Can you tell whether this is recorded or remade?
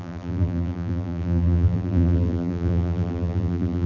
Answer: remade